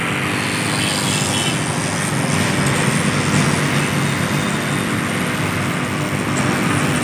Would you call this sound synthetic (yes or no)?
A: no